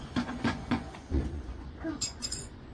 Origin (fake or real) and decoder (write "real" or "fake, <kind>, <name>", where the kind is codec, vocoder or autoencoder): fake, vocoder, Vocos